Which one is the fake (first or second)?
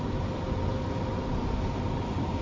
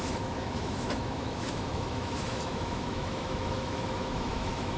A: second